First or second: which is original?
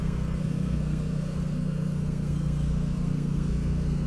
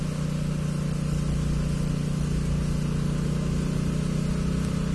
second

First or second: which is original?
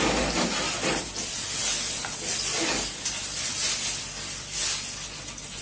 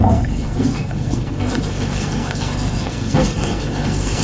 first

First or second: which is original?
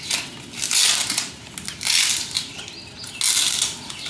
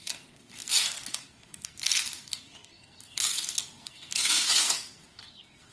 first